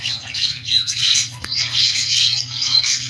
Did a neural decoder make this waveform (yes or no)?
yes